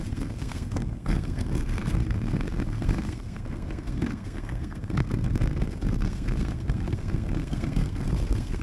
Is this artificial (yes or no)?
yes